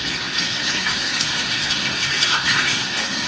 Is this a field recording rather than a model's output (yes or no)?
no